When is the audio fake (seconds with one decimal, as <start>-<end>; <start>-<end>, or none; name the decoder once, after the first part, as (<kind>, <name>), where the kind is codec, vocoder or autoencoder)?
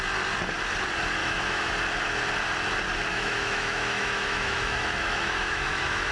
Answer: 1.2-1.7 (autoencoder, DAC-VAE); 3.1-6.1